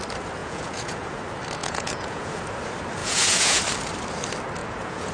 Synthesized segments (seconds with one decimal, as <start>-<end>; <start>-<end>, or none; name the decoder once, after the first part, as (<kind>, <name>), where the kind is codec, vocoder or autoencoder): 0.4-1.2 (vocoder, Vocos); 1.6-2.4; 3.0-3.6; 4.6-5.1